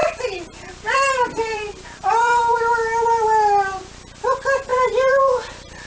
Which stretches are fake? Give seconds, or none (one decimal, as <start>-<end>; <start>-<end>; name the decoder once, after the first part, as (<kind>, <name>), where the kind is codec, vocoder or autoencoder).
0.0-2.4 (vocoder, BigVGAN v2); 4.7-5.2

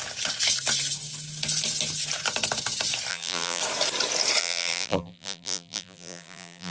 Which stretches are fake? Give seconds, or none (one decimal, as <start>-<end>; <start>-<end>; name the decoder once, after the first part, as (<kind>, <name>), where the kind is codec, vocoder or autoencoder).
3.1-3.6 (vocoder, BigVGAN v2); 4.4-6.7

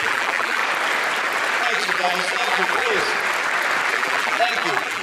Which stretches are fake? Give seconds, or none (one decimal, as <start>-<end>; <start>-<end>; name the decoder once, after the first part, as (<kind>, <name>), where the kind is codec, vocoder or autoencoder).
0.0-0.6 (vocoder, BigVGAN v2); 1.6-2.9; 3.9-5.0